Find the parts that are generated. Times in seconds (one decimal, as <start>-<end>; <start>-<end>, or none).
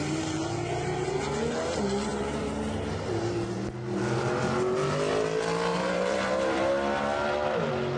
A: 5.7-6.7